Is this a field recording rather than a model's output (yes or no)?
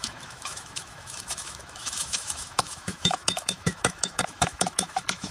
no